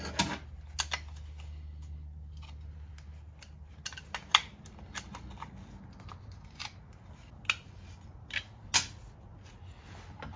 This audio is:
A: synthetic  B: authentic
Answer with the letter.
B